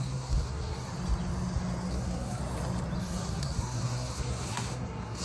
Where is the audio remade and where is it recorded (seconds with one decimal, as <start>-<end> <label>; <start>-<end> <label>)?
0.0-0.9 remade; 0.9-1.9 recorded; 1.9-2.4 remade; 2.4-3.0 recorded; 3.0-5.2 remade